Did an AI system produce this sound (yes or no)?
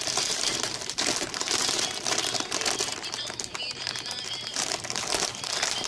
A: yes